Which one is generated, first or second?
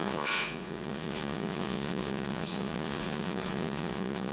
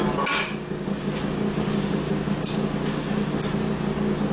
first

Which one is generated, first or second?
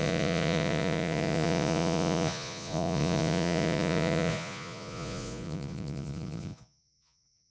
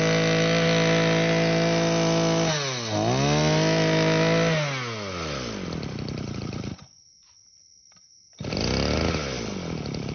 first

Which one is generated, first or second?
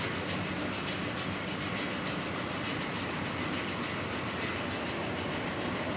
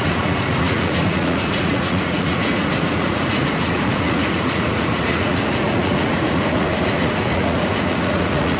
second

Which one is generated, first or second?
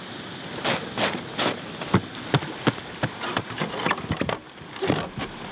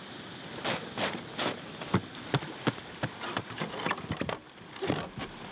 second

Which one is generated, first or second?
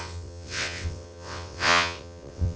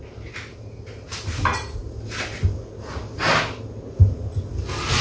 first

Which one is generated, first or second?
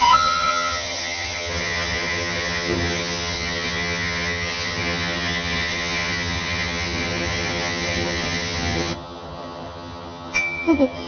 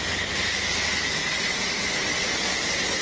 first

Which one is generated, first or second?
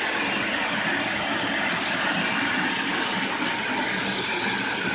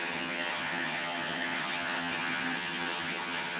second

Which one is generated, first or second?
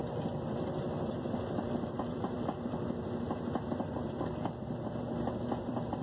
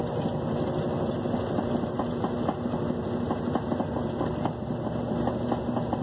first